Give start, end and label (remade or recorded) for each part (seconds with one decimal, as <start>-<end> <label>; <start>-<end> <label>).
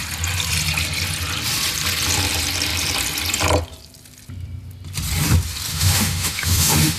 0.0-5.7 recorded; 5.7-7.0 remade